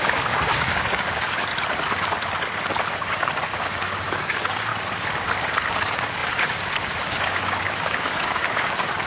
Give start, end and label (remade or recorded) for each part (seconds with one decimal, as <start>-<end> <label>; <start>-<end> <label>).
0.0-1.5 remade; 1.5-2.9 recorded; 2.9-4.7 remade; 4.7-5.7 recorded; 5.7-9.1 remade